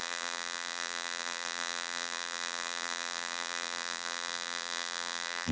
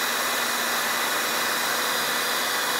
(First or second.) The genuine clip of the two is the second